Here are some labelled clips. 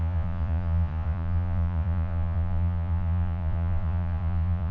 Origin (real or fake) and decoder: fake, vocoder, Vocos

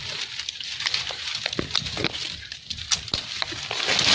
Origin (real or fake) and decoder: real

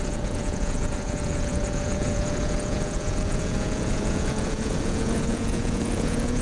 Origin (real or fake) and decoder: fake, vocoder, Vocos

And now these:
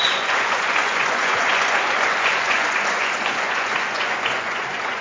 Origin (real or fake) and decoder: fake, vocoder, Vocos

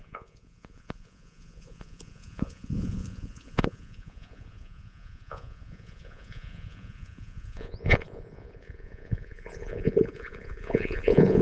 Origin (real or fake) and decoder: fake, vocoder, Vocos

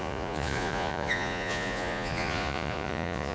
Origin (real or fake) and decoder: fake, vocoder, Vocos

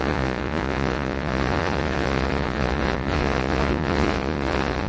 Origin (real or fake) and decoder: fake, vocoder, Vocos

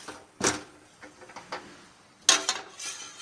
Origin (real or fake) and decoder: real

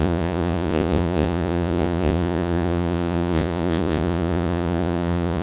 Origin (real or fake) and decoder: fake, vocoder, Vocos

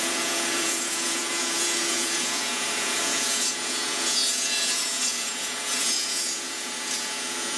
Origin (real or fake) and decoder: fake, vocoder, Vocos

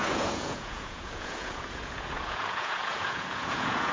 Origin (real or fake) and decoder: fake, vocoder, Vocos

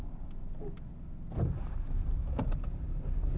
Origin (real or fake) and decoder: real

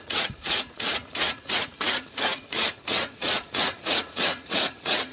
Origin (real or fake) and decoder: fake, vocoder, Vocos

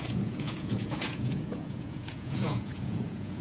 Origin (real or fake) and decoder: fake, vocoder, Vocos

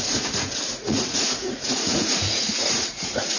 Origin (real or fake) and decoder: fake, vocoder, Vocos